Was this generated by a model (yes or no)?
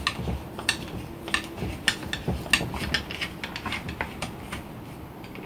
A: no